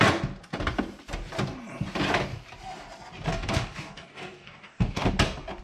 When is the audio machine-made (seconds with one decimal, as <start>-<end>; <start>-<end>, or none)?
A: 3.3-5.1